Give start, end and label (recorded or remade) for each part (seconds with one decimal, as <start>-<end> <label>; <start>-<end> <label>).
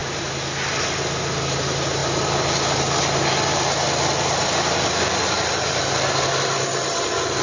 0.0-7.4 recorded